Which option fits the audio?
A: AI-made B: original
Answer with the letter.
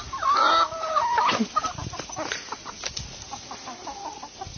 B